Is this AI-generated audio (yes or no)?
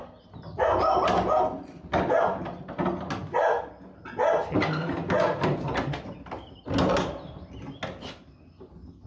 no